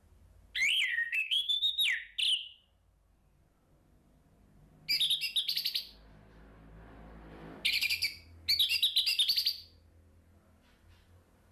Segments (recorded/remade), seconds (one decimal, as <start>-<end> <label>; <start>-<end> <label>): 0.0-0.9 recorded; 0.9-1.7 remade; 1.7-11.5 recorded